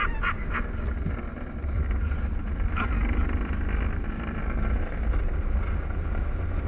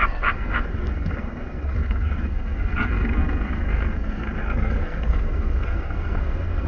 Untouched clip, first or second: first